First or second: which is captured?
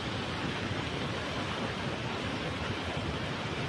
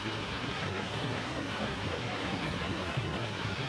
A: first